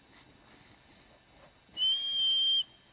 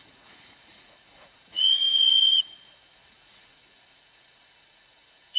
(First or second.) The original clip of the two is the first